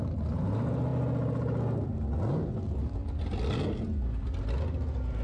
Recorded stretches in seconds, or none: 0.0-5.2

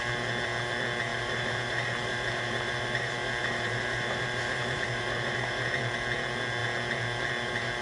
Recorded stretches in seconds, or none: 0.0-1.1; 5.8-7.8

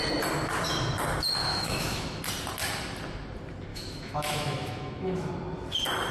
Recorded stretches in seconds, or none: 0.0-1.5; 2.2-3.7; 5.3-6.1

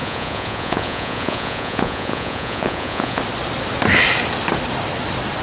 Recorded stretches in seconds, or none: 3.2-5.4